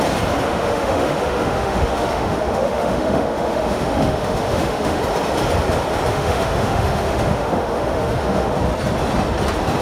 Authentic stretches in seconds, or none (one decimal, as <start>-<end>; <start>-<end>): 0.0-0.5; 5.0-6.1; 8.5-9.8